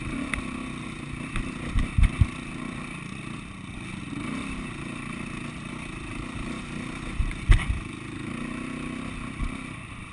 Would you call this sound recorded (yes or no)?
yes